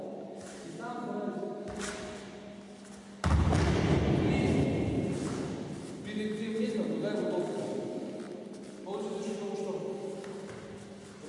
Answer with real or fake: real